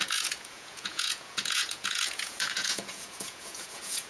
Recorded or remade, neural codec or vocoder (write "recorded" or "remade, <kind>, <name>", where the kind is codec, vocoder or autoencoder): remade, vocoder, Vocos